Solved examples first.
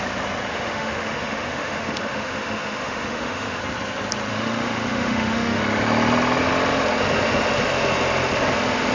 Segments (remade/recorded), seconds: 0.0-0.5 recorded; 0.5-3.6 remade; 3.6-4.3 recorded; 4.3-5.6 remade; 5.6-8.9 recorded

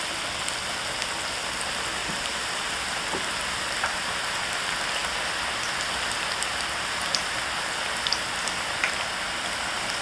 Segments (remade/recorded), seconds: 0.0-2.0 recorded; 2.0-4.4 remade; 4.4-10.0 recorded